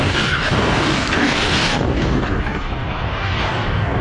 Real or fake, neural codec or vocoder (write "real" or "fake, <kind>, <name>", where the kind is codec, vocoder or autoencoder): fake, codec, DAC